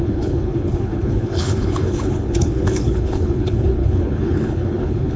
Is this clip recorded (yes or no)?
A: no